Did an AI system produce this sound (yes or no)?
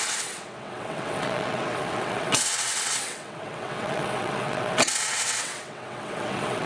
yes